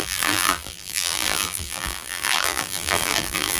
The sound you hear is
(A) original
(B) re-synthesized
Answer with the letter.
B